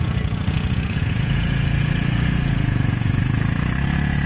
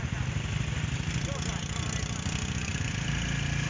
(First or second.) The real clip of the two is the second